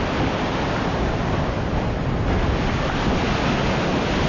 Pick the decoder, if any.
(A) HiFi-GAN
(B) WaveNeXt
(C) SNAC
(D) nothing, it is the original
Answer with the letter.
D